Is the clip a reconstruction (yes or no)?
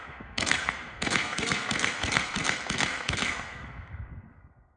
yes